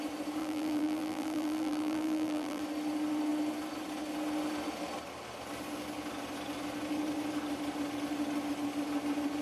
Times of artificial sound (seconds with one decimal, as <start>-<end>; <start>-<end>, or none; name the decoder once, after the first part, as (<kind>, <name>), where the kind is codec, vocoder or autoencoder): 0.4-2.6 (vocoder, BigVGAN v2)